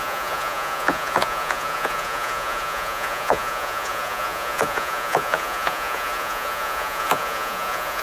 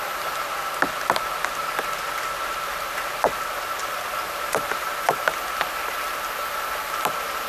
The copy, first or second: first